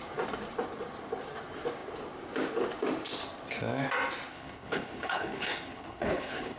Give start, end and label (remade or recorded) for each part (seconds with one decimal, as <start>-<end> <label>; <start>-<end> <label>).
0.0-4.3 recorded; 4.3-6.6 remade